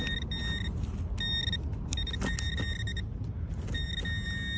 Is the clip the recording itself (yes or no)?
yes